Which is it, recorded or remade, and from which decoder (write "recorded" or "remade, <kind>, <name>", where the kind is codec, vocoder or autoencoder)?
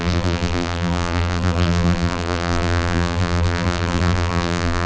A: remade, vocoder, BigVGAN v2